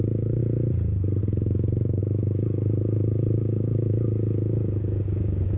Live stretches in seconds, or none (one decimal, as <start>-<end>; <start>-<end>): 0.4-1.2